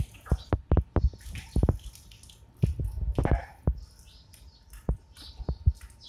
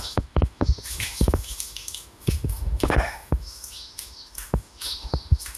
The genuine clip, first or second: first